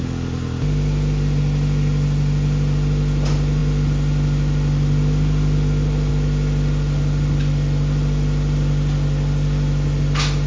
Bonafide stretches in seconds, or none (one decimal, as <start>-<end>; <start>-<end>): 0.0-10.5